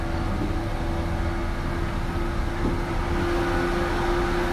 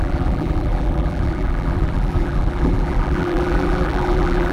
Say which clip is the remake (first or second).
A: second